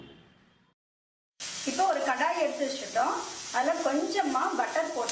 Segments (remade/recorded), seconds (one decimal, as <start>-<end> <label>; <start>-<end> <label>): 0.0-0.8 recorded; 0.8-1.9 remade; 1.9-3.0 recorded; 3.0-5.1 remade